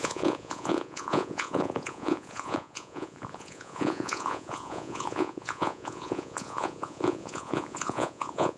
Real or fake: fake